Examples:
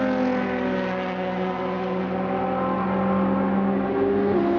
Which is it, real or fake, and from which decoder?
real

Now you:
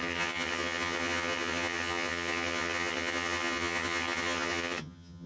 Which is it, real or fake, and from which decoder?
fake, vocoder, HiFi-GAN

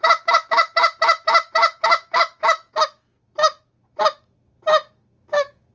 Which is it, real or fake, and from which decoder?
fake, autoencoder, DAC-VAE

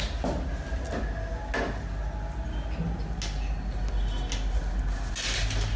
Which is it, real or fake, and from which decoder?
real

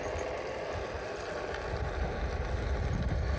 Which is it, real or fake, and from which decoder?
real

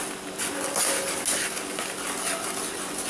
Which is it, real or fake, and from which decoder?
real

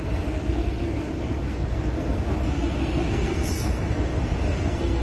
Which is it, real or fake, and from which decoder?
fake, codec, SNAC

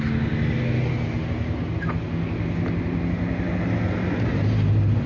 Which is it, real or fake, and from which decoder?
real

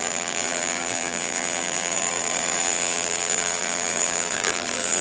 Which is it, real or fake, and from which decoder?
fake, vocoder, BigVGAN v2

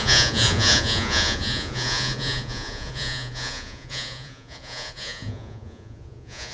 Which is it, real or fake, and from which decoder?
fake, vocoder, Vocos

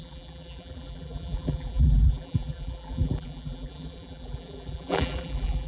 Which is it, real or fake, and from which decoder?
fake, vocoder, BigVGAN v2